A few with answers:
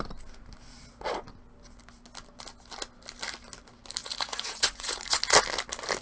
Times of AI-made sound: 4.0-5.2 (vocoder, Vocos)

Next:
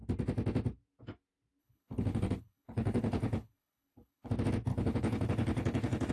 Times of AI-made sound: 1.6-4.3 (codec, HILCodec); 4.7-6.1

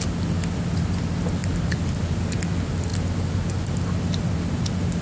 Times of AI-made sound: 1.4-2.2 (vocoder, BigVGAN v2)

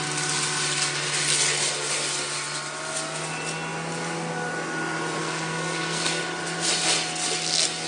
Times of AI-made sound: 5.2-6.2 (codec, SNAC)

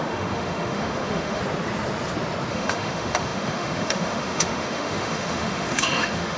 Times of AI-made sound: 0.0-1.4 (autoencoder, DAC-VAE); 2.5-6.4